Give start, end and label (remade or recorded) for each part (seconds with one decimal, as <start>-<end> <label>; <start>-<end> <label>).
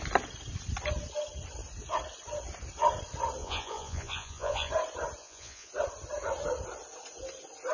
0.0-3.4 recorded; 3.4-4.7 remade; 4.7-5.2 recorded; 5.2-5.7 remade; 5.7-7.7 recorded